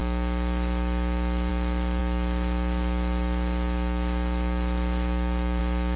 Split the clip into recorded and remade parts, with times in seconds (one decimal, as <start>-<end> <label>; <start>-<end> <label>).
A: 0.0-6.0 recorded